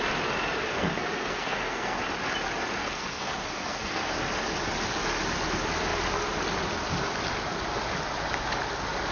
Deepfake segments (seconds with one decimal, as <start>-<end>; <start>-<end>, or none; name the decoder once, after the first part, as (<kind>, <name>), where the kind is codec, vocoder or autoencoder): 0.7-2.0 (codec, SNAC); 2.8-4.1